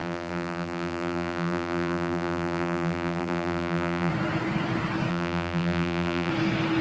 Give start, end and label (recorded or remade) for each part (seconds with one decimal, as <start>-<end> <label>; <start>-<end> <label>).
0.0-4.1 remade; 4.1-5.1 recorded; 5.1-6.3 remade; 6.3-6.8 recorded